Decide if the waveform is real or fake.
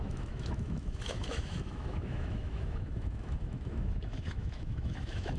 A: fake